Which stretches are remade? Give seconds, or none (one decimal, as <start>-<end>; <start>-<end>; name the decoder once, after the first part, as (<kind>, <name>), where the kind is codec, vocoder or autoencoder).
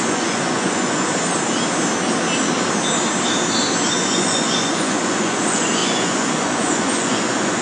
0.0-1.1 (vocoder, Vocos); 3.9-7.6